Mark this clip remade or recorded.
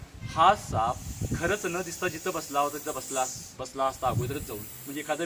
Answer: recorded